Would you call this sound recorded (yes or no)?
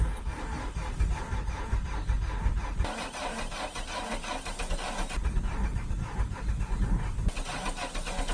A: yes